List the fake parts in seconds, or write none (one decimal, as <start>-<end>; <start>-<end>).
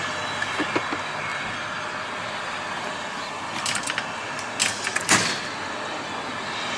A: none